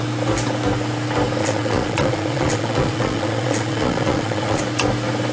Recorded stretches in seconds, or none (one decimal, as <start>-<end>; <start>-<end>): 0.0-1.4; 4.6-5.3